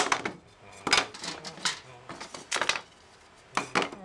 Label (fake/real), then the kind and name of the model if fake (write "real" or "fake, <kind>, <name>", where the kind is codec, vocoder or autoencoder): real